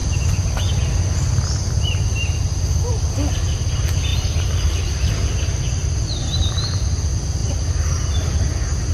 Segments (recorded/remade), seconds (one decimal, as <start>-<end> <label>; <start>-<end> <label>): 0.0-4.1 recorded; 4.1-5.1 remade; 5.1-6.2 recorded; 6.2-6.8 remade; 6.8-8.9 recorded